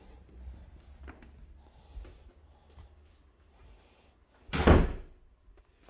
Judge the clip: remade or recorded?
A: recorded